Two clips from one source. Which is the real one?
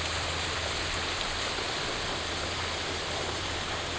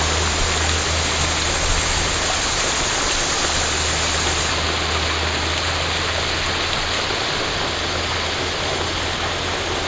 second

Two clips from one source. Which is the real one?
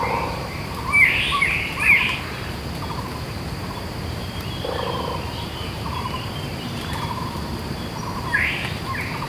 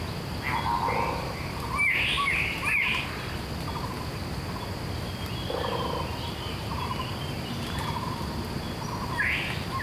second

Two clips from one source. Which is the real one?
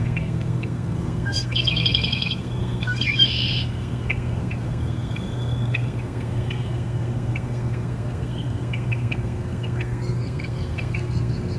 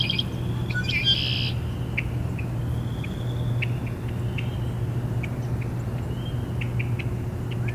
second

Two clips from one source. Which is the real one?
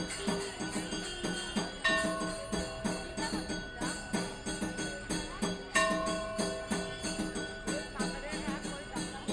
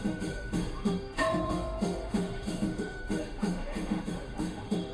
first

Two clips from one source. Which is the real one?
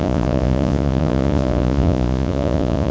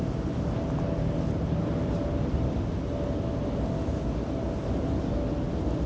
second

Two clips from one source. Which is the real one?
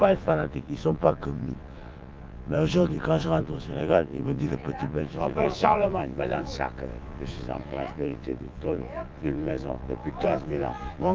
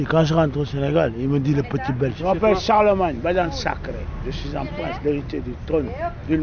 second